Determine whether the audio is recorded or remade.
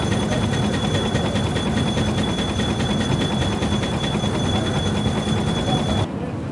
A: recorded